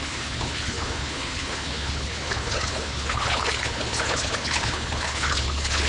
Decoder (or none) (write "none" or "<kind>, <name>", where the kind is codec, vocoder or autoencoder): codec, HILCodec